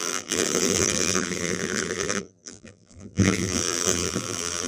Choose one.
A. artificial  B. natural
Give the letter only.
A